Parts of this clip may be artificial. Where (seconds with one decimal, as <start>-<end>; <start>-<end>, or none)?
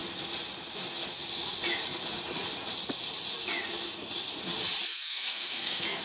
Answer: 4.9-6.0